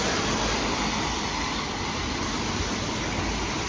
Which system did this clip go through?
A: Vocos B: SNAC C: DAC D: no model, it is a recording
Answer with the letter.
D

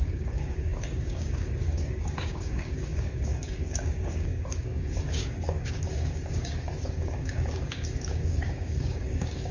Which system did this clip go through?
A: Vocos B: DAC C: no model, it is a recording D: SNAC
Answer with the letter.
B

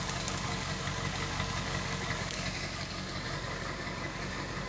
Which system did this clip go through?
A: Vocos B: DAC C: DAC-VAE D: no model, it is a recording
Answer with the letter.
B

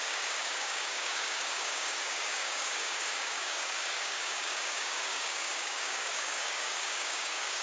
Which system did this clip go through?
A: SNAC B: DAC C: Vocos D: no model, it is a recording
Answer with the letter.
B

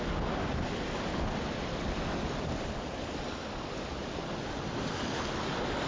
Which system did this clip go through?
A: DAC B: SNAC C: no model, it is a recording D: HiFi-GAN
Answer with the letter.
C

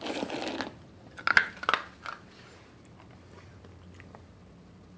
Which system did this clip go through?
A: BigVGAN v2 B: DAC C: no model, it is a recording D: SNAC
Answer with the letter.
C